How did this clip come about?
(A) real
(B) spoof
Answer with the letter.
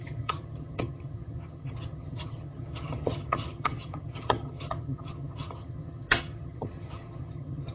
B